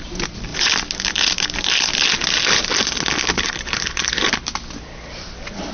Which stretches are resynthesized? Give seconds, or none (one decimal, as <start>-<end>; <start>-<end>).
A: none